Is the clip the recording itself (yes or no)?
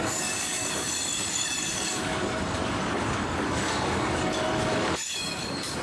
no